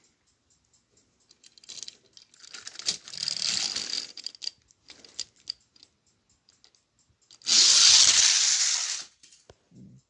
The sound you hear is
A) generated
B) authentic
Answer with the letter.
B